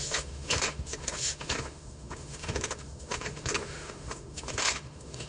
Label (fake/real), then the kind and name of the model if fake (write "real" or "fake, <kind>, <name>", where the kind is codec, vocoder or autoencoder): fake, autoencoder, DAC-VAE